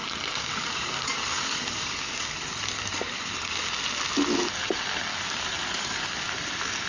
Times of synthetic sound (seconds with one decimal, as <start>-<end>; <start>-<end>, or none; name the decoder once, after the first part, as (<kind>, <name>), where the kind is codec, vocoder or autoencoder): 0.0-3.7 (codec, DAC); 5.1-6.3